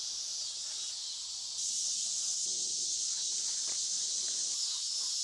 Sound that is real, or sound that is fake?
real